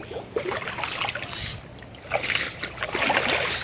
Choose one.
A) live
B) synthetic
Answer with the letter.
A